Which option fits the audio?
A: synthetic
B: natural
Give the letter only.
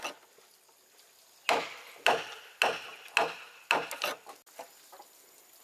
B